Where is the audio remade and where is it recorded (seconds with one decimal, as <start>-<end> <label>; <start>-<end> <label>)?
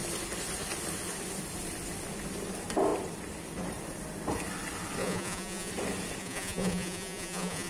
0.0-5.0 recorded; 5.0-5.7 remade; 5.7-6.2 recorded; 6.2-7.7 remade